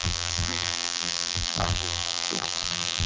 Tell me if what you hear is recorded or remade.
remade